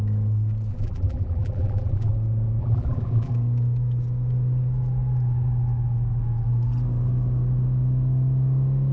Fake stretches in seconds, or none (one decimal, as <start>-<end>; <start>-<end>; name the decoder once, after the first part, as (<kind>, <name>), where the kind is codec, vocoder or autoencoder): 0.7-2.1 (vocoder, BigVGAN v2); 2.6-3.3